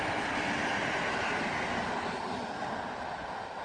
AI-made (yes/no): no